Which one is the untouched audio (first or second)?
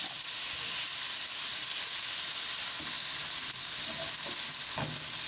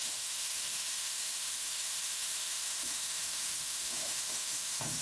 first